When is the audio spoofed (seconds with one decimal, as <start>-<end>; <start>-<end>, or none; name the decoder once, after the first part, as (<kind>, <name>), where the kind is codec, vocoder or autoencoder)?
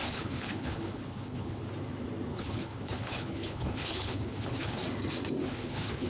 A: 0.0-1.6 (codec, HILCodec); 2.3-4.8; 5.4-6.1